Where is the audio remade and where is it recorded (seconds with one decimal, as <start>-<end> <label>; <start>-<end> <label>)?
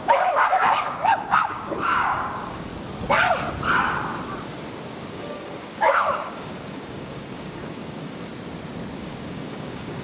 0.0-2.7 remade; 2.7-5.1 recorded; 5.1-8.3 remade; 8.3-9.0 recorded; 9.0-10.0 remade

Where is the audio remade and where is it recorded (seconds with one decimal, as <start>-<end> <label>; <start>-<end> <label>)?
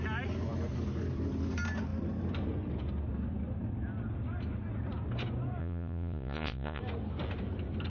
0.0-5.6 recorded; 5.6-6.8 remade; 6.8-7.9 recorded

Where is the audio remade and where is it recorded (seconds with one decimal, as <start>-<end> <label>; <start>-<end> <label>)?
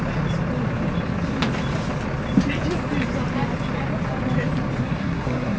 0.0-4.8 recorded; 4.8-5.6 remade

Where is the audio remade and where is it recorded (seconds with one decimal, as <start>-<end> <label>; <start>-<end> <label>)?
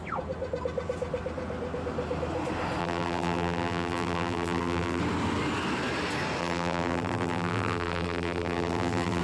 0.0-2.8 recorded; 2.8-5.0 remade; 5.0-6.4 recorded; 6.4-9.2 remade